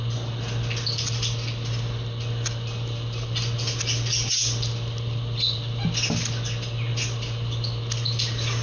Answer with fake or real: real